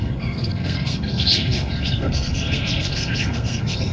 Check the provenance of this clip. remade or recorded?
remade